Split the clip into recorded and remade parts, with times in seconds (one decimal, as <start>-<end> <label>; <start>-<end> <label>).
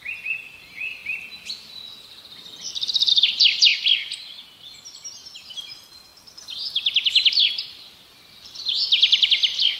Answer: 0.0-1.0 remade; 1.0-3.1 recorded; 3.1-3.7 remade; 3.7-5.4 recorded; 5.4-6.1 remade; 6.1-7.3 recorded; 7.3-9.8 remade